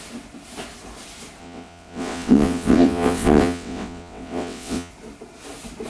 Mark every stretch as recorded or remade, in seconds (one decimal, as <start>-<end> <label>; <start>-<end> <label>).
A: 0.0-1.4 recorded; 1.4-4.9 remade; 4.9-5.9 recorded

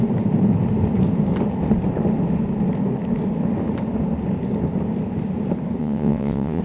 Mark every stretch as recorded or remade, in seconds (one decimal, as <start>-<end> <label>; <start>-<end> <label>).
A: 0.0-5.8 recorded; 5.8-6.6 remade

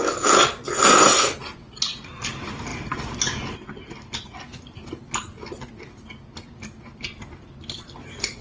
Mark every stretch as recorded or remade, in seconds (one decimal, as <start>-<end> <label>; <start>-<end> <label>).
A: 0.0-8.4 recorded

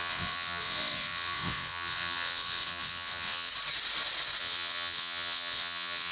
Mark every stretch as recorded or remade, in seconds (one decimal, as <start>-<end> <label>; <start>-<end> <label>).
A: 0.0-3.5 remade; 3.5-4.4 recorded; 4.4-6.1 remade

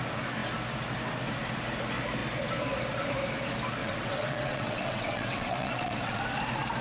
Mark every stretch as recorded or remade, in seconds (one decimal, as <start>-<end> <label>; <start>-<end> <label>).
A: 0.0-3.8 recorded; 3.8-6.2 remade; 6.2-6.8 recorded